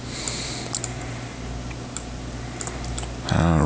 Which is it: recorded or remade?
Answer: recorded